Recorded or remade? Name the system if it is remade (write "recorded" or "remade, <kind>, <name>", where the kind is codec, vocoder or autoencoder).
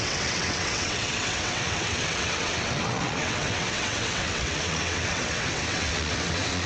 remade, vocoder, WaveNeXt